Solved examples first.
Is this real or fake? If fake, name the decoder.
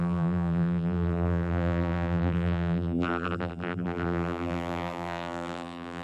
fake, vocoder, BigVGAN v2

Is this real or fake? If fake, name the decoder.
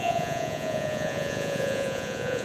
fake, vocoder, Vocos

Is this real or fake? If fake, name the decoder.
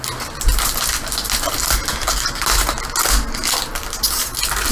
real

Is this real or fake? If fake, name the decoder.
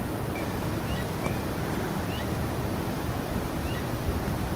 real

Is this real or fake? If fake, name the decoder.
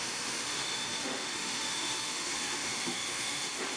fake, autoencoder, DAC-VAE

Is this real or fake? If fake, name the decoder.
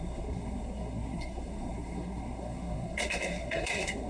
fake, codec, SNAC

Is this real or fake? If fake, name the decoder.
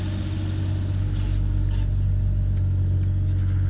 real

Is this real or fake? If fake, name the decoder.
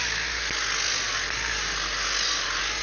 real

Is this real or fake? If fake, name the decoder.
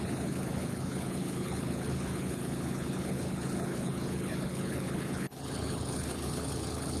fake, codec, HILCodec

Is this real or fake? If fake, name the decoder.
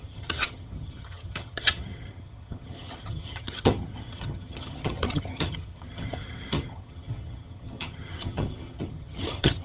fake, vocoder, HiFi-GAN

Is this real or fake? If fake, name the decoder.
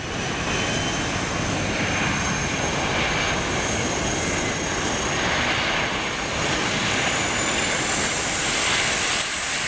real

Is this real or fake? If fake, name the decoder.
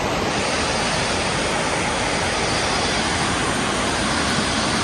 real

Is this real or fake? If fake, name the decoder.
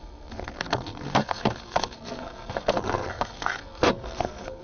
fake, codec, SNAC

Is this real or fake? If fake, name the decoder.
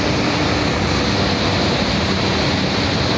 real